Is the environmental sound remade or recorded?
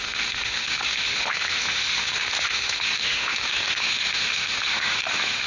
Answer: remade